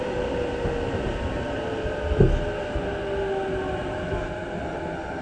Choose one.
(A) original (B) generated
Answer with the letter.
A